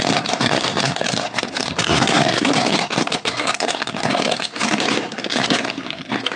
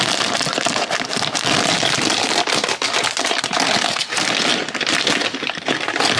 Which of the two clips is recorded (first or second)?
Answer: second